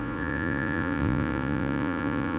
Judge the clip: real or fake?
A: fake